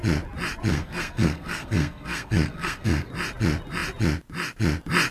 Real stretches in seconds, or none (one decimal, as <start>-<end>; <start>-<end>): 0.0-0.7; 3.1-5.1